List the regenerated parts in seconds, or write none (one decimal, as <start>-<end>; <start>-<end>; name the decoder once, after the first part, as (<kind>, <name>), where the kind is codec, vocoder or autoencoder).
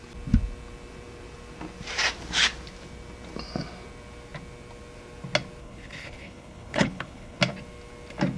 5.6-7.4 (codec, HILCodec)